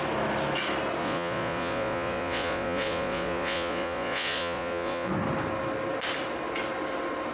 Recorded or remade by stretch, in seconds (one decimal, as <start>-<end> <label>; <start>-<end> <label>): 0.0-1.0 recorded; 1.0-5.1 remade; 5.1-7.3 recorded